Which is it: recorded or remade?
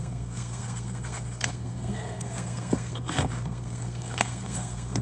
remade